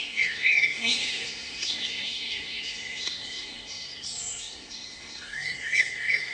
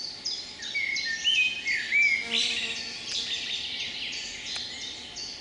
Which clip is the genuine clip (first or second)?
second